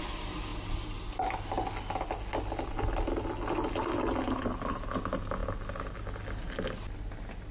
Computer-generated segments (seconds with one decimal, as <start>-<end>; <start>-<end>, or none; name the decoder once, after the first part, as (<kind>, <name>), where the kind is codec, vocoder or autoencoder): none